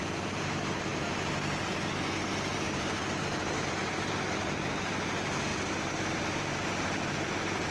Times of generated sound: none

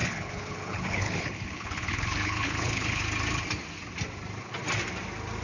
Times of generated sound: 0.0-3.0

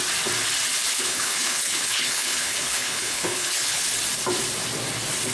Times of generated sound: 0.9-3.8

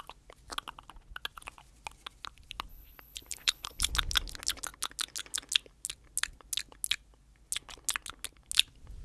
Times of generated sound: 2.7-3.9

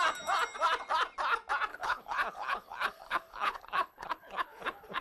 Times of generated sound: 1.7-5.0

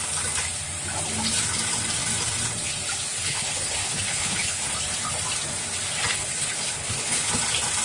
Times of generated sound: 3.1-4.7; 6.1-7.3

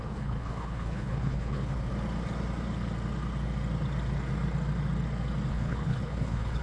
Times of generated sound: 0.0-1.9; 5.5-6.6

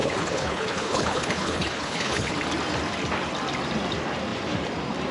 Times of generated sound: 0.0-2.3